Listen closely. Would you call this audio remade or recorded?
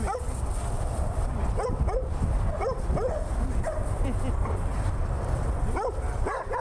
recorded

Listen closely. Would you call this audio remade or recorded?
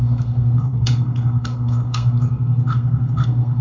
remade